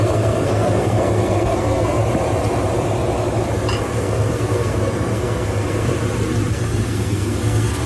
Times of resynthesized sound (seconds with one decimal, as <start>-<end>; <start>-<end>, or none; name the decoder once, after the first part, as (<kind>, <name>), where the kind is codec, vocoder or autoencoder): 0.0-2.0 (codec, SNAC); 3.8-5.9; 6.5-7.9